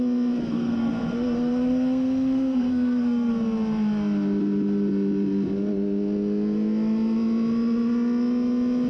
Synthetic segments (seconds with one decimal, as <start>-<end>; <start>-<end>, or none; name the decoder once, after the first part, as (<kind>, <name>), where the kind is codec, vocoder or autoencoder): 0.5-3.3 (codec, SNAC)